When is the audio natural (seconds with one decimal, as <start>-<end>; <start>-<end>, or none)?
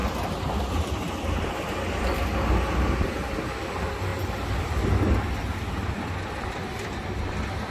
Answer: 2.0-4.1; 7.2-7.7